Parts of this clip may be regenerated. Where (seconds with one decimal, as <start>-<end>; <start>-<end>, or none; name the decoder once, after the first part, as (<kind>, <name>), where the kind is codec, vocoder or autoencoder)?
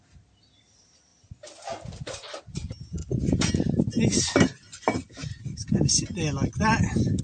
none